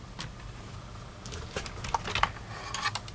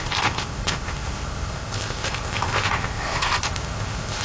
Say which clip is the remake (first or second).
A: second